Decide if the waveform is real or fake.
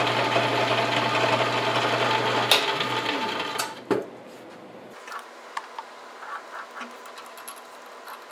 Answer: real